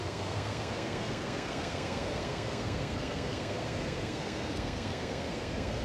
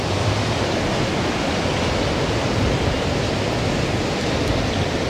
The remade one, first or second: first